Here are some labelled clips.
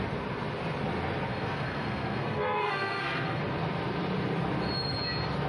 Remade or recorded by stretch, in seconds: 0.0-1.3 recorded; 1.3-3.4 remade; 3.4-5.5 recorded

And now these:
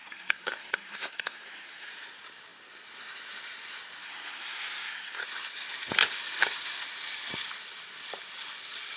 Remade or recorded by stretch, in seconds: 0.0-1.9 remade; 1.9-4.0 recorded; 4.0-5.2 remade; 5.2-9.0 recorded

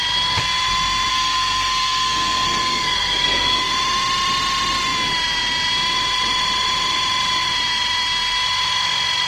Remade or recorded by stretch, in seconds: 0.0-1.1 recorded; 1.1-3.7 remade; 3.7-9.3 recorded

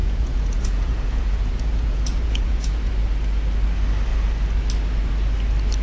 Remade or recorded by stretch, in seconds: 0.0-2.9 remade; 2.9-5.8 recorded

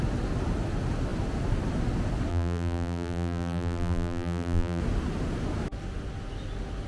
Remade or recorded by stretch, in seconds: 0.0-2.3 recorded; 2.3-4.8 remade; 4.8-6.9 recorded

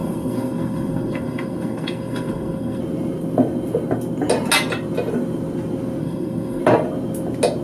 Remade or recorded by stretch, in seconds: 0.0-2.8 remade; 2.8-6.0 recorded; 6.0-6.6 remade; 6.6-7.6 recorded

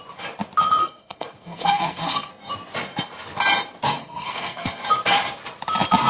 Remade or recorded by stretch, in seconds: 0.0-0.8 recorded; 0.8-2.3 remade; 2.3-4.0 recorded; 4.0-4.8 remade; 4.8-6.1 recorded

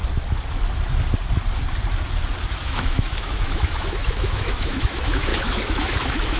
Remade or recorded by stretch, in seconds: 0.0-2.5 recorded; 2.5-6.4 remade